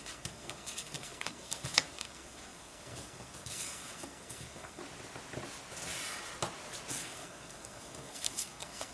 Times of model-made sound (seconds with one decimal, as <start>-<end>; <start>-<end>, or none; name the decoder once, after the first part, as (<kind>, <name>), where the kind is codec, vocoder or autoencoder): 0.0-4.8 (codec, SNAC); 6.9-8.9